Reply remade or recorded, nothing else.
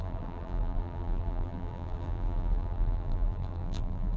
remade